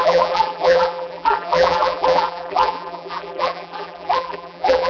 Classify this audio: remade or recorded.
remade